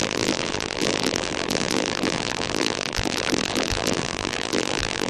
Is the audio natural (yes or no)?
no